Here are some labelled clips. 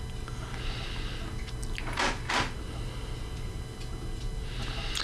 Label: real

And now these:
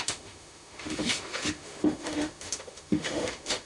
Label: fake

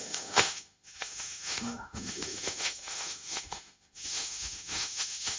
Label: fake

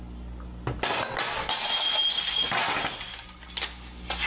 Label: real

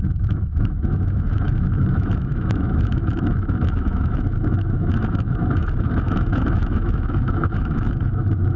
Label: fake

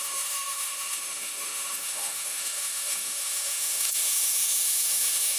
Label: fake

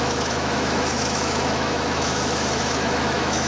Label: fake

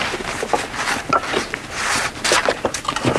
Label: real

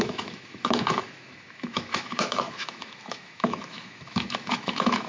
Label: fake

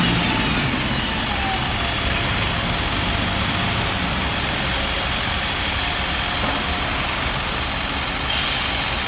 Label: real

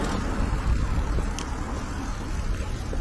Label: real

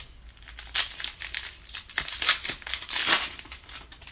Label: real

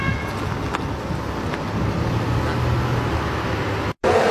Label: real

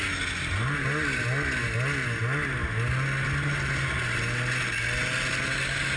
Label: real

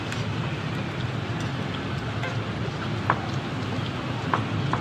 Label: real